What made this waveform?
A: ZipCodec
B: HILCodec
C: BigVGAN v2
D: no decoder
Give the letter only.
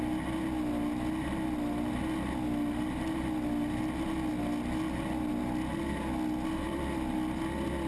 D